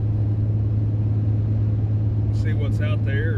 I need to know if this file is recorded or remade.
recorded